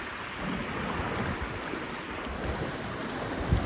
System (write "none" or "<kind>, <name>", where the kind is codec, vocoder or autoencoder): none